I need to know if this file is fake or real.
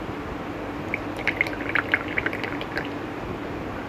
real